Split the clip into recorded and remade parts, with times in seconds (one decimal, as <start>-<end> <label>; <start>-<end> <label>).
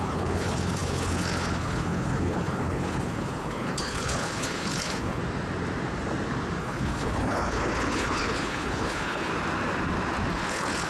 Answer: 0.0-5.2 remade; 5.2-6.6 recorded; 6.6-9.3 remade; 9.3-10.3 recorded; 10.3-10.9 remade